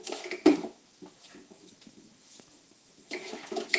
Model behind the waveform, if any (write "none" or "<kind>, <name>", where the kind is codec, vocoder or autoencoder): autoencoder, DAC-VAE